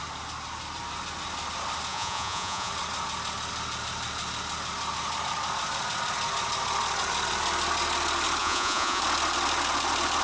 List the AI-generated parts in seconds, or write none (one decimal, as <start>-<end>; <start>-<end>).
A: 1.9-2.7; 8.4-9.0